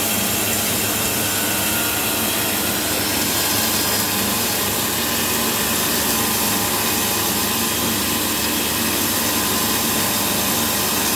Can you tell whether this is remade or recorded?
recorded